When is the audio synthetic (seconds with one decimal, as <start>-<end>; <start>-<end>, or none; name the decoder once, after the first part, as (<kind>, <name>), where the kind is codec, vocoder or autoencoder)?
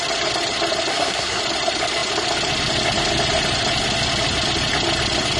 0.9-1.4 (codec, SNAC)